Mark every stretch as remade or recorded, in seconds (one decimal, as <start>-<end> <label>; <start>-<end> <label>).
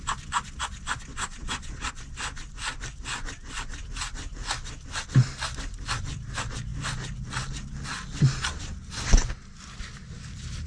0.0-1.1 recorded; 1.1-1.9 remade; 1.9-10.7 recorded